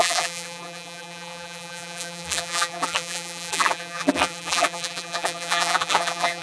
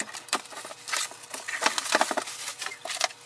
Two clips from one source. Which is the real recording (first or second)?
second